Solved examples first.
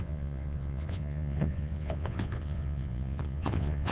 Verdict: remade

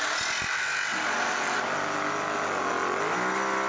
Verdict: recorded